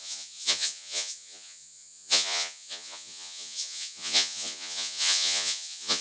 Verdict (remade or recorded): remade